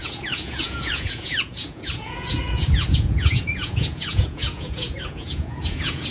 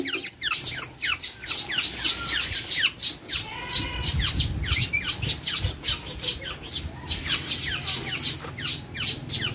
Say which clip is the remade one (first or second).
first